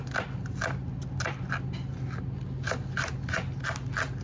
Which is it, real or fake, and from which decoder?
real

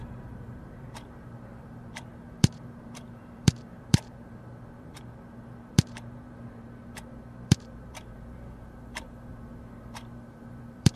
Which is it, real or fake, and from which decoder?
fake, vocoder, BigVGAN v2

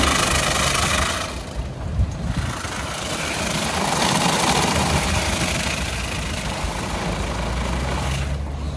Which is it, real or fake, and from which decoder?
real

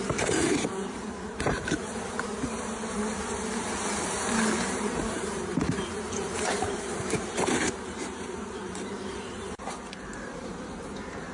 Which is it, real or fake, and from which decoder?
fake, vocoder, BigVGAN v2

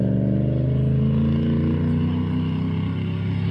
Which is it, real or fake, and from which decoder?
real